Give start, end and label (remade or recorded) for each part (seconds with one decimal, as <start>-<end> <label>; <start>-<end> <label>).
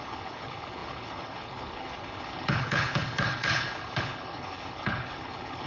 0.0-5.7 remade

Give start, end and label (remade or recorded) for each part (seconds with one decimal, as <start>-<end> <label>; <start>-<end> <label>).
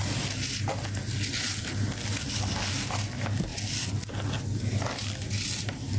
0.0-6.0 recorded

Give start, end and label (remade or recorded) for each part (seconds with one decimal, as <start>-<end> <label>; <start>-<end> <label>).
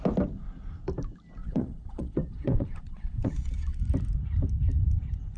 0.0-1.4 recorded; 1.4-3.8 remade; 3.8-5.4 recorded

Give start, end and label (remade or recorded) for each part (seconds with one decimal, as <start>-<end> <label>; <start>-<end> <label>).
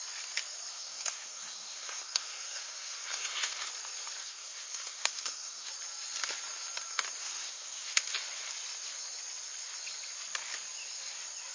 0.0-0.7 recorded; 0.7-3.7 remade; 3.7-4.2 recorded; 4.2-5.7 remade; 5.7-7.2 recorded; 7.2-8.0 remade; 8.0-11.5 recorded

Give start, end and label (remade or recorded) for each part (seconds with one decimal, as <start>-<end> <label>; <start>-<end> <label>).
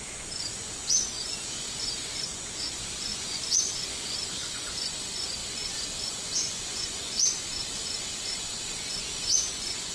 0.0-9.9 remade